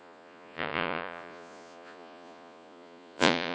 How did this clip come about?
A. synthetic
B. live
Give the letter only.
A